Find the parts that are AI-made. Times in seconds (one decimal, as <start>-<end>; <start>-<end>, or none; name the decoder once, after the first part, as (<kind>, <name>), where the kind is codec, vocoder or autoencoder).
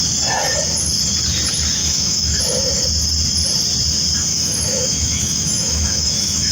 1.8-2.4 (autoencoder, DAC-VAE); 4.3-6.5